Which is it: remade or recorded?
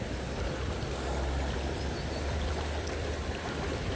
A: recorded